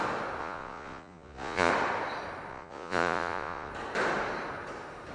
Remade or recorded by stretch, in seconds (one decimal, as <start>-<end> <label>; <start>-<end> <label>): 0.0-0.4 recorded; 0.4-1.7 remade; 1.7-2.5 recorded; 2.5-3.7 remade; 3.7-5.1 recorded